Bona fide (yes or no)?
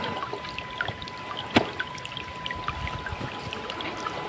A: yes